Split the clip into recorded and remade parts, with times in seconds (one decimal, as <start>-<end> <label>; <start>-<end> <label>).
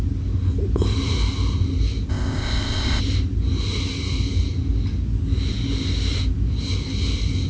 0.0-2.1 recorded; 2.1-3.0 remade; 3.0-7.5 recorded